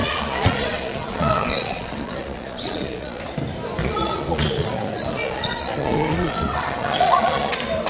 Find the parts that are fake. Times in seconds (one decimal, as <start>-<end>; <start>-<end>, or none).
0.0-3.2; 3.8-7.5